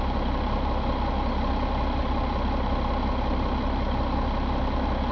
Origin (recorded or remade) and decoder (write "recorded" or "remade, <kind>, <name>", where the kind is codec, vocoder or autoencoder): recorded